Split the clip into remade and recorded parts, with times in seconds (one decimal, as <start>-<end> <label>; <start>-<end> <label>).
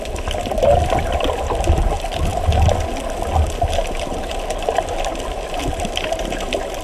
0.0-6.8 recorded